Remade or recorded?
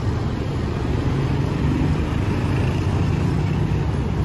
recorded